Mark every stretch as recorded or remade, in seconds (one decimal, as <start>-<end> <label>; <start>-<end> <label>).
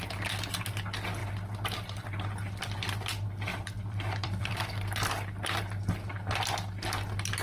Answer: 0.0-3.5 recorded; 3.5-4.7 remade; 4.7-7.4 recorded